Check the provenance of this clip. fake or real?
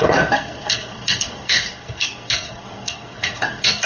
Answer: fake